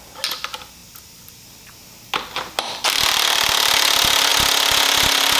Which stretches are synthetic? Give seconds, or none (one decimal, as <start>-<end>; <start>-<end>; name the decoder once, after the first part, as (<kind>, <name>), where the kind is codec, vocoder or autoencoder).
none